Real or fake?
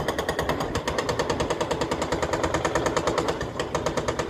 real